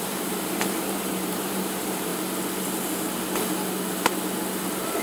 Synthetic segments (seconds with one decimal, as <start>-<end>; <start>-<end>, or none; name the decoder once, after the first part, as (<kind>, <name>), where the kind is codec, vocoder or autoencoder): 0.0-2.1 (vocoder, BigVGAN v2)